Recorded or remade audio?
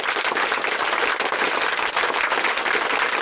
recorded